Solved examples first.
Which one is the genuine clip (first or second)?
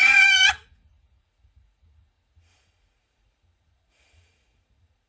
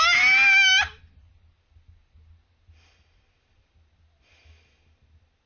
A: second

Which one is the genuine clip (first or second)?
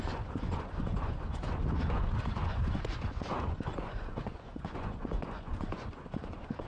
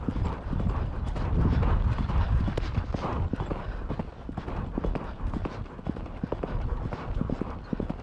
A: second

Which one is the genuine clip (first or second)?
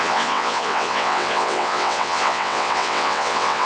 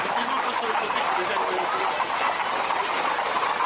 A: second